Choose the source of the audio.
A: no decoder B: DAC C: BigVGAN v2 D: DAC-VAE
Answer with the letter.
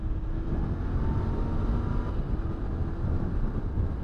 A